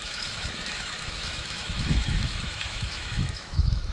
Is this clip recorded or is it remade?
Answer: remade